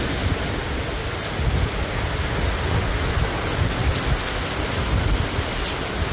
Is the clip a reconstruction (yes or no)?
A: no